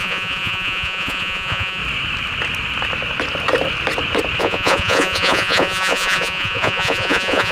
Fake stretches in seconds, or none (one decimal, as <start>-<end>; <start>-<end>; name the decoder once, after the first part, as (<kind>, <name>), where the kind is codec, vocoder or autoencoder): 0.0-1.8 (vocoder, Vocos); 4.4-7.5